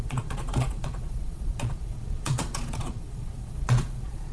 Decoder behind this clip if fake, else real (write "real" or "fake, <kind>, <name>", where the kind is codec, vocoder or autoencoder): fake, vocoder, Vocos